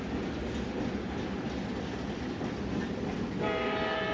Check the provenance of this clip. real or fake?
real